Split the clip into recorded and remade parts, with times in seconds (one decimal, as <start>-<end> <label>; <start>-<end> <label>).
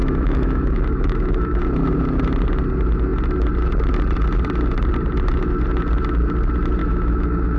0.0-1.6 remade; 1.6-6.8 recorded; 6.8-7.6 remade